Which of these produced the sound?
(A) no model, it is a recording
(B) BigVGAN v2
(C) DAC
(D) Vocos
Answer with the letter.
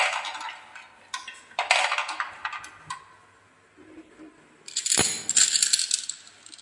A